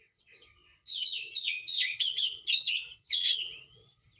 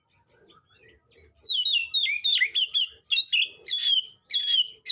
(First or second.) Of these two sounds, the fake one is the first